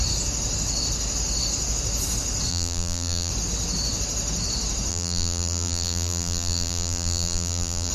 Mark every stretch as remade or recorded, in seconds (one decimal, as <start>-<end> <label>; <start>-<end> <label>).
0.0-2.5 recorded; 2.5-3.3 remade; 3.3-4.9 recorded; 4.9-7.9 remade